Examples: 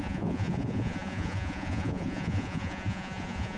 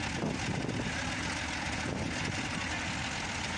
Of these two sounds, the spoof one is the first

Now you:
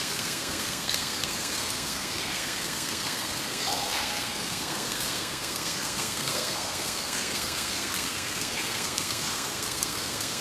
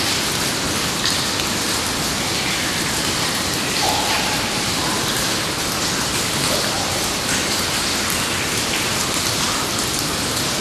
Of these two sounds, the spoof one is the first